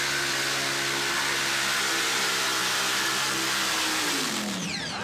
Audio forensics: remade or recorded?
recorded